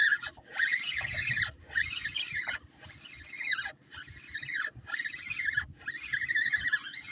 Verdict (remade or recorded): recorded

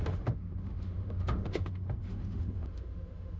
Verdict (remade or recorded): remade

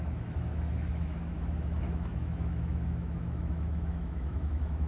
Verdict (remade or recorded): remade